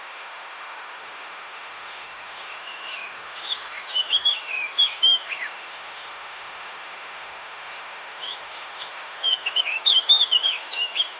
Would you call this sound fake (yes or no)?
yes